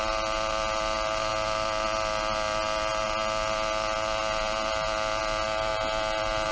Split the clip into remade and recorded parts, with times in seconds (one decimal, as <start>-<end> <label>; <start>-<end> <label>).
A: 0.0-6.5 recorded